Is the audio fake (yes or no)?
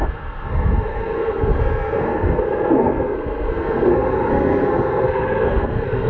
yes